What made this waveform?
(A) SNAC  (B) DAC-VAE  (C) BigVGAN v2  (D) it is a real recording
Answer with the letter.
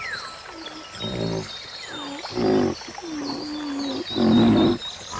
D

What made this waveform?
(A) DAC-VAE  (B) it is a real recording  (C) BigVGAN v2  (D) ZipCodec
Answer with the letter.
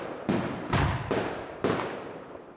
C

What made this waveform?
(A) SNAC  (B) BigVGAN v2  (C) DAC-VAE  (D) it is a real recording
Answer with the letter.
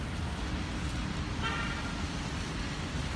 D